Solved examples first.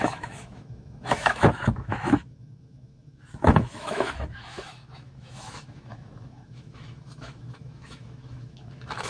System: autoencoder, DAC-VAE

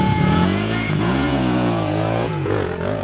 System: vocoder, Vocos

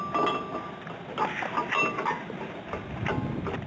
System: none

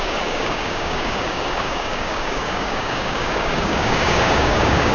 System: codec, DAC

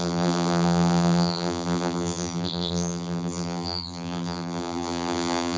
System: vocoder, BigVGAN v2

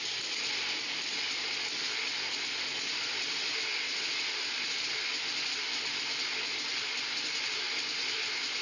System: none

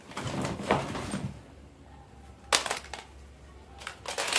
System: none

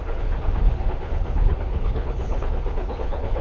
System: codec, HILCodec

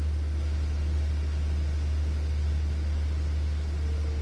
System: none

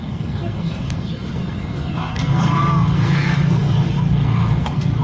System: codec, SNAC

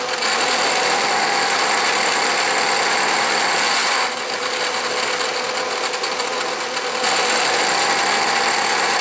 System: none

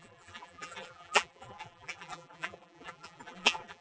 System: vocoder, BigVGAN v2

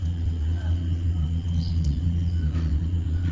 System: vocoder, Vocos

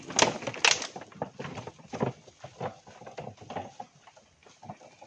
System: none